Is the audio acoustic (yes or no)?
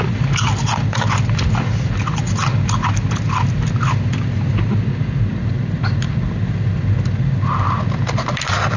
yes